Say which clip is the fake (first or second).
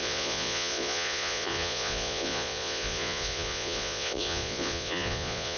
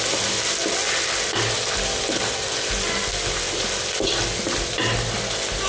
first